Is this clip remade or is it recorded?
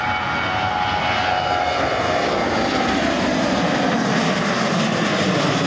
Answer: recorded